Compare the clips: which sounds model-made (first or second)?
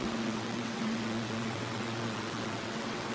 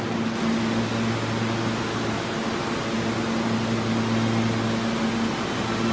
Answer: first